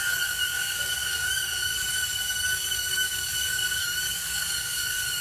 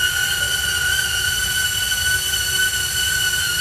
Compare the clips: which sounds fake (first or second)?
first